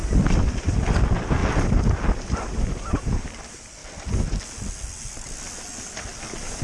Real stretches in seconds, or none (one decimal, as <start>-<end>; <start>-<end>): 0.8-6.6